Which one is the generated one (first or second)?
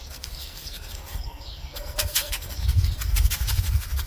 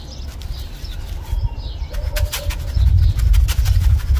first